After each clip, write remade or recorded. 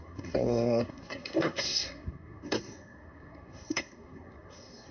remade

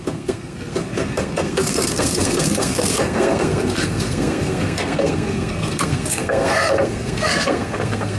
remade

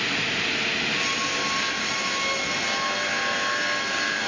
recorded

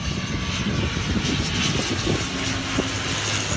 recorded